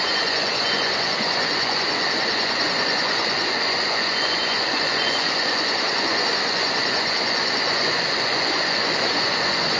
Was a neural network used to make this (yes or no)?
yes